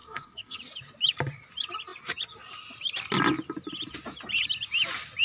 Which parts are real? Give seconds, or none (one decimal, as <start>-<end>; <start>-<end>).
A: 0.6-5.2